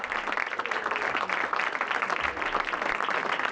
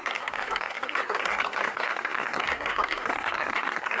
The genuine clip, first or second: first